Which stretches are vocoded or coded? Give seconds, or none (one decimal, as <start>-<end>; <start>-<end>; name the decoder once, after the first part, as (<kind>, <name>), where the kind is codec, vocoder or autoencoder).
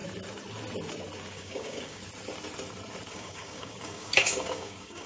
1.3-2.0 (codec, DAC); 3.1-5.1